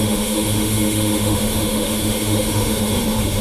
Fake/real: fake